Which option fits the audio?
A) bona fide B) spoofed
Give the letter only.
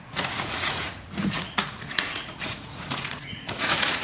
B